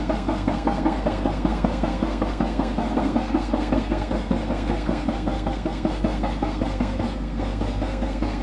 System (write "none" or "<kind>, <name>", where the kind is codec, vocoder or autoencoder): codec, SNAC